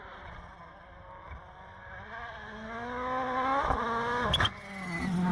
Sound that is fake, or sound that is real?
real